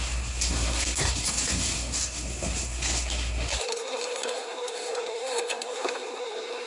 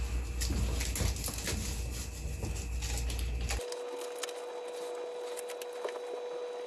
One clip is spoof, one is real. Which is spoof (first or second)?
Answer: first